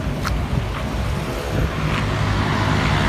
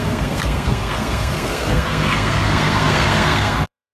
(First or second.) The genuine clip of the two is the first